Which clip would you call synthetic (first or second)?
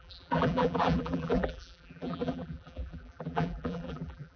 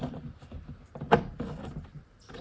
first